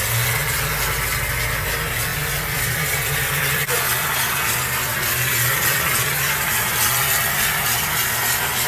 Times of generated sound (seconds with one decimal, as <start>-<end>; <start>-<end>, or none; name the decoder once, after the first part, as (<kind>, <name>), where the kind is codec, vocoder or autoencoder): 2.1-3.8 (vocoder, BigVGAN v2)